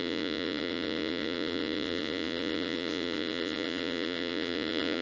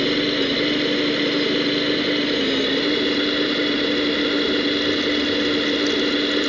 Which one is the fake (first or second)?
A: first